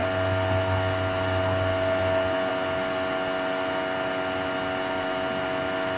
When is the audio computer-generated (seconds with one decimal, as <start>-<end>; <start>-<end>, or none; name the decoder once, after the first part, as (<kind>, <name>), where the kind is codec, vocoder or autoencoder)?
none